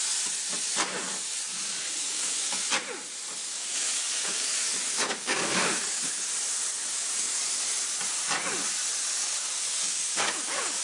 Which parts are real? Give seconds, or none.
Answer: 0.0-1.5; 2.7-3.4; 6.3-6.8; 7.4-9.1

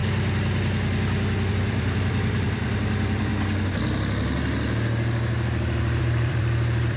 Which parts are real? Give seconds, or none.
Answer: 0.0-1.5; 3.3-6.0